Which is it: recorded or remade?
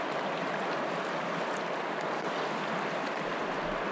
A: recorded